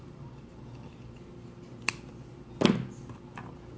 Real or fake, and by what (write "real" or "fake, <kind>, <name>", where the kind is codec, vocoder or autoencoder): real